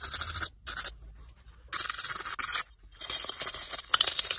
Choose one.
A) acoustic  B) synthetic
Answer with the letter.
A